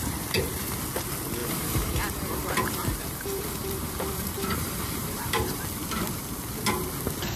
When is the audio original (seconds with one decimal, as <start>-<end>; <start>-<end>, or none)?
0.0-1.4; 5.6-7.4